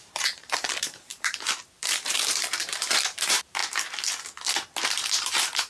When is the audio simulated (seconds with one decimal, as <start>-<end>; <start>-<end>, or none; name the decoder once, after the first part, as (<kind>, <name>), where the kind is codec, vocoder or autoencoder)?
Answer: 0.0-3.6 (vocoder, BigVGAN v2); 4.9-5.7